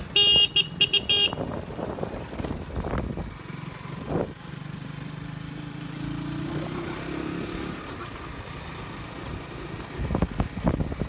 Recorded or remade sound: recorded